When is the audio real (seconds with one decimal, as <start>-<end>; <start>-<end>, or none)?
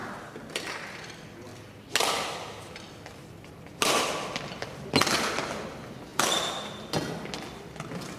0.0-8.2